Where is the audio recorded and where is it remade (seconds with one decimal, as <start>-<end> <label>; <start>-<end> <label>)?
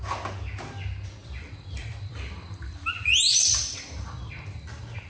0.0-1.2 recorded; 1.2-4.3 remade; 4.3-5.1 recorded